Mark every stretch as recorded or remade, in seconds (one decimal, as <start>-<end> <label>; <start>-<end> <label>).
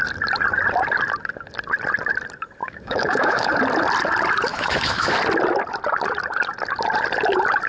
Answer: 0.0-2.6 recorded; 2.6-3.5 remade; 3.5-4.5 recorded; 4.5-5.1 remade; 5.1-7.7 recorded